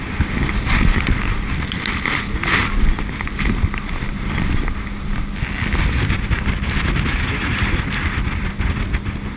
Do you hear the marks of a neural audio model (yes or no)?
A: no